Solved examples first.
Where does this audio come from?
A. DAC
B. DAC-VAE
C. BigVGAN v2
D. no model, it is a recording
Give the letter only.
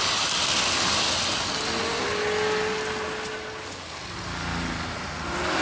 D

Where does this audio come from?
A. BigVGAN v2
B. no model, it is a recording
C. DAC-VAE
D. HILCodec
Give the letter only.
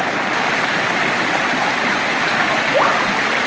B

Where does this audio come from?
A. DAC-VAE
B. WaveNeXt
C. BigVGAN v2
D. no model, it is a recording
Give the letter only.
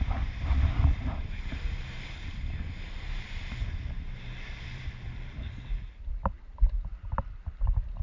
C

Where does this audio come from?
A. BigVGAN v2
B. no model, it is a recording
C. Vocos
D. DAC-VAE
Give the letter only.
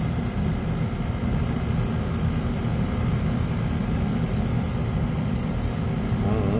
B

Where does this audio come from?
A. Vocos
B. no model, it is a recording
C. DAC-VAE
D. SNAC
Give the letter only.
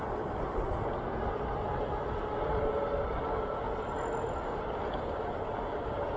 B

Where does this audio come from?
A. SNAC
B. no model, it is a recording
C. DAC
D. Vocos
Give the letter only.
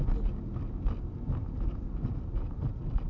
B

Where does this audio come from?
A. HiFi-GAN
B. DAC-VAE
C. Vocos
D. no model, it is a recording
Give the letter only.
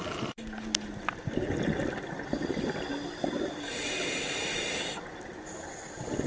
D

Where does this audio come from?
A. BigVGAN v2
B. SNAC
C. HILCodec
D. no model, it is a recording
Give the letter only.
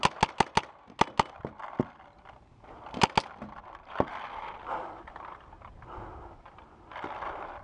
D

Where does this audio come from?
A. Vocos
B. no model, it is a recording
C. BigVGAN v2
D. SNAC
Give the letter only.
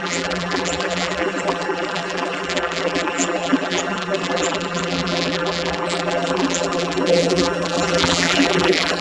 C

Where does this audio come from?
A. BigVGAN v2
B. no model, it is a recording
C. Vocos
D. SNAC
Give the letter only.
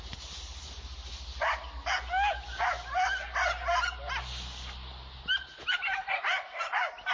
B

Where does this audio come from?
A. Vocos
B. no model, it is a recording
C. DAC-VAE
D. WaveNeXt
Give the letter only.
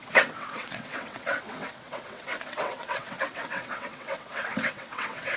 D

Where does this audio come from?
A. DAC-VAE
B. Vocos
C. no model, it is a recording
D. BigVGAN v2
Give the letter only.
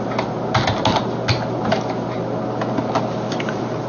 C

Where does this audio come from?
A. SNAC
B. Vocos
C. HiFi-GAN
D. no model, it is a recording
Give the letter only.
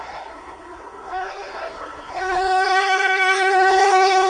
A